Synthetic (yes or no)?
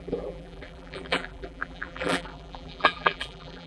yes